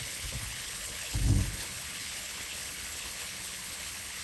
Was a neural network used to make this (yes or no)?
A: yes